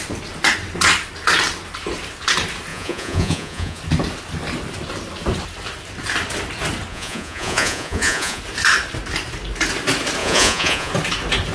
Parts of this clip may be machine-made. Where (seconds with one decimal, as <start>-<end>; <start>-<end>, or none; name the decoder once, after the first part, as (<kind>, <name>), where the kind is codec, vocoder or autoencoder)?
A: 2.7-3.8 (vocoder, Vocos); 6.9-8.4; 10.2-10.9